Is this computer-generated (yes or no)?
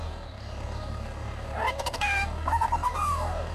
yes